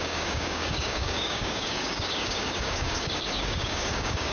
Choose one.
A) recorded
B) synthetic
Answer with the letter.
B